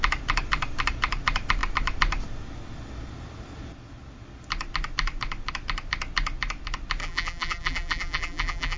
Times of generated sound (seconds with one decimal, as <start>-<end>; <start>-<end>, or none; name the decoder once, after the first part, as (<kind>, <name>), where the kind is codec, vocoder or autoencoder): 7.0-8.8 (vocoder, BigVGAN v2)